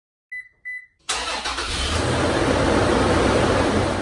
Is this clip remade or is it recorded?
recorded